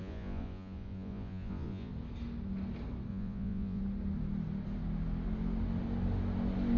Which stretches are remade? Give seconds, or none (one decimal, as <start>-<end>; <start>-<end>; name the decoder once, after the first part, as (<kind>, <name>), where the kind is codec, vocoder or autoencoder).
0.0-1.9 (vocoder, Vocos); 3.1-3.8